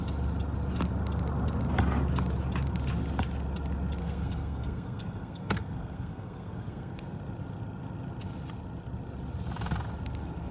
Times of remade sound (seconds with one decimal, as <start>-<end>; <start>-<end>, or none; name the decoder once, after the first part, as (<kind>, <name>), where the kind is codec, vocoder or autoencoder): 4.0-7.2 (codec, SNAC)